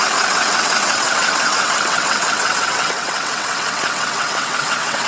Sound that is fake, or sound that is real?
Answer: fake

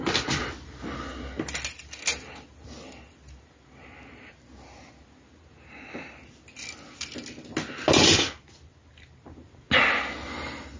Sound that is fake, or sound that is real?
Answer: real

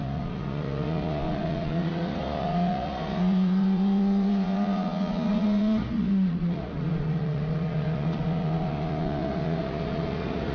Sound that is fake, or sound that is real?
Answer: fake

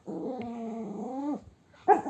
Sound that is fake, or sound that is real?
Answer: real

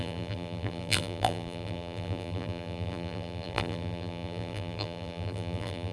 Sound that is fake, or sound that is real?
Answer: fake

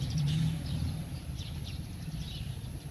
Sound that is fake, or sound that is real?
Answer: fake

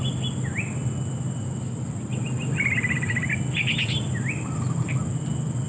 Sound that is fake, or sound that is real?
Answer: real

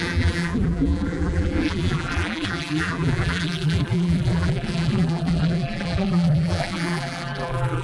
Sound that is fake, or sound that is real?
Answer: fake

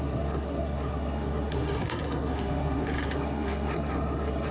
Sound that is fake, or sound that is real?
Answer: fake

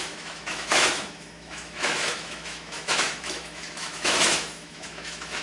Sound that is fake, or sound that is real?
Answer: fake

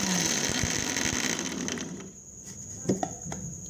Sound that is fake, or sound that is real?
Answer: real